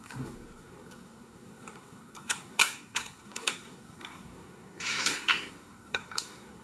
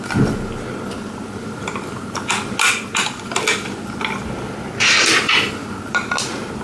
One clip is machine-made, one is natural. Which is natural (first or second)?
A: second